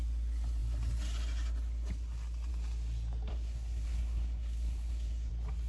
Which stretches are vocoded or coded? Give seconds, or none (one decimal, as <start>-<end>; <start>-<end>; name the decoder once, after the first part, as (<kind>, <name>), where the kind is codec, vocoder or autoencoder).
3.3-5.3 (codec, SNAC)